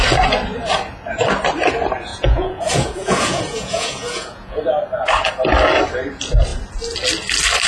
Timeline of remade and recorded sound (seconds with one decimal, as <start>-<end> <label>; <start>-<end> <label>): 0.0-2.1 recorded; 2.1-4.6 remade; 4.6-7.7 recorded